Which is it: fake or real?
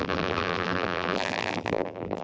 fake